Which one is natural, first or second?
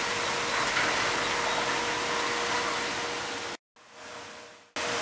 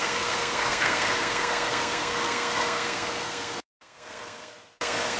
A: first